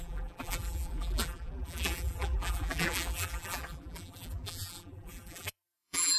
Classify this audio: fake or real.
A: fake